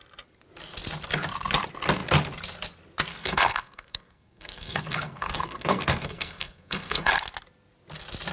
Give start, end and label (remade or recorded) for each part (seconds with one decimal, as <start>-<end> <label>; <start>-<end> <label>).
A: 0.0-3.1 recorded; 3.1-7.2 remade; 7.2-8.3 recorded